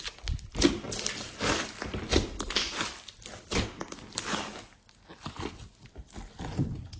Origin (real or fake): real